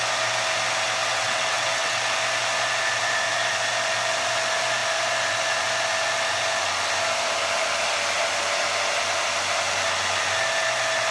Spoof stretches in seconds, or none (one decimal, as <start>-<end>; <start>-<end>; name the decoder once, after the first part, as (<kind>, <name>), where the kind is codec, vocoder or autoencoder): 1.0-2.0 (vocoder, WaveNeXt)